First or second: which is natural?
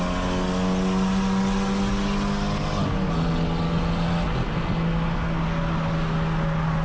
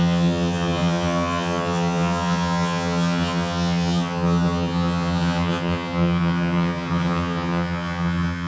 first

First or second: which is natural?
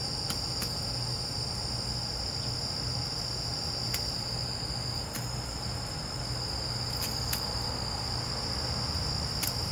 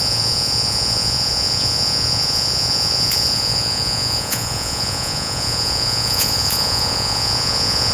first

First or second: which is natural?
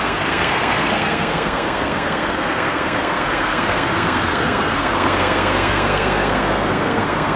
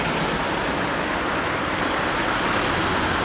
second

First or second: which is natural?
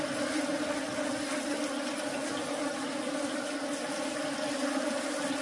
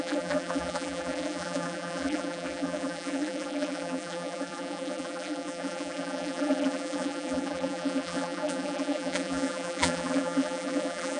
first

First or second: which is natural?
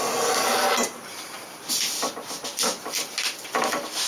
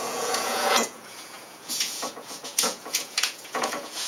first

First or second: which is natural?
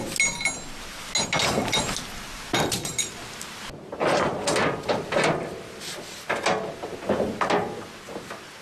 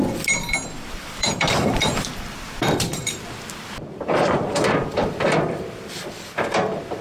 first